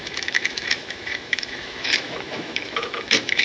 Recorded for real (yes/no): no